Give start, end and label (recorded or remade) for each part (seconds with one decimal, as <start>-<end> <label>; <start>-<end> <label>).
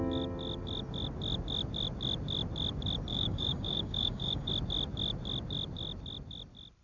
0.0-3.1 recorded; 3.1-4.5 remade; 4.5-6.8 recorded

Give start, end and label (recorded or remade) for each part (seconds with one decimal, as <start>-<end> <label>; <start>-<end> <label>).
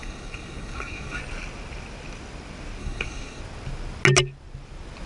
0.0-1.2 remade; 1.2-2.8 recorded; 2.8-3.4 remade; 3.4-5.1 recorded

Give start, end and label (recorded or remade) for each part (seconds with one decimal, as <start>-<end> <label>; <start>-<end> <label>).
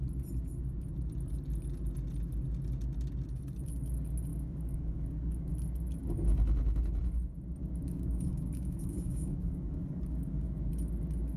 0.0-4.3 recorded; 4.3-5.5 remade; 5.5-7.6 recorded; 7.6-10.7 remade; 10.7-11.4 recorded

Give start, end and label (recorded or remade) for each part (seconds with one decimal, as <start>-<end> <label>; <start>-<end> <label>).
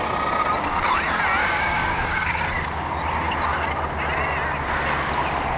0.0-1.4 recorded; 1.4-2.4 remade; 2.4-5.6 recorded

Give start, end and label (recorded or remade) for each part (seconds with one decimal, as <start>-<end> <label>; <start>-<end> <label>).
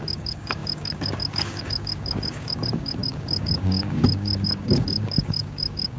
0.0-6.0 remade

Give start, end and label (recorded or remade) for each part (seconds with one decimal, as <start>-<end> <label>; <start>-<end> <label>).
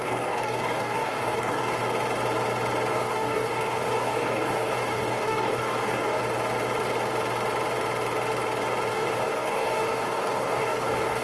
0.0-1.8 remade; 1.8-2.9 recorded; 2.9-6.2 remade; 6.2-8.9 recorded; 8.9-11.2 remade